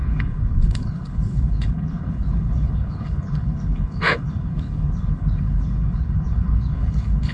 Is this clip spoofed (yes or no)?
yes